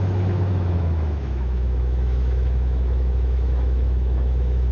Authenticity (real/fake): fake